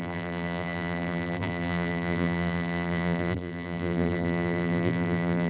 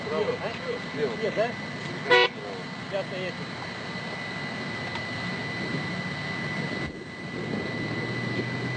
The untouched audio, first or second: second